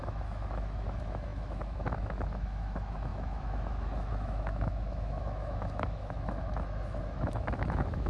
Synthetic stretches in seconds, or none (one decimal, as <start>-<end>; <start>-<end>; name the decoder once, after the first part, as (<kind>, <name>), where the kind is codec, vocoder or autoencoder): 0.0-8.1 (autoencoder, DAC-VAE)